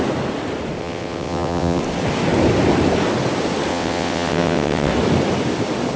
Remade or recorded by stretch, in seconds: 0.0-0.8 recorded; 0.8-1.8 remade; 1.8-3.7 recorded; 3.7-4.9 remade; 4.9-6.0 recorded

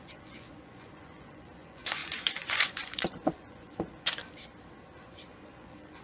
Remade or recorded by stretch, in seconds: 0.0-4.2 remade; 4.2-5.0 recorded; 5.0-6.0 remade

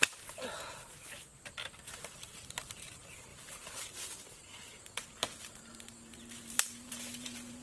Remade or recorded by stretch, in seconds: 0.0-1.3 remade; 1.3-1.9 recorded; 1.9-7.6 remade